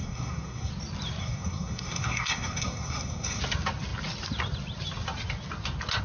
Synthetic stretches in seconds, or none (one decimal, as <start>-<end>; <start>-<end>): 0.0-0.7; 1.2-3.4